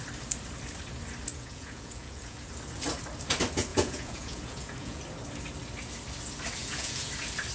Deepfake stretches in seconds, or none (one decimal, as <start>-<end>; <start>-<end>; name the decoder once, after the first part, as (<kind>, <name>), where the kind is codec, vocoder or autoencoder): 1.3-2.5 (vocoder, Vocos); 3.7-5.0; 6.6-7.1